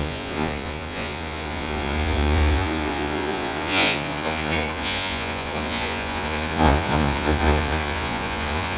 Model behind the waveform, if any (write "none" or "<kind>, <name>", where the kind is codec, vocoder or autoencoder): vocoder, Vocos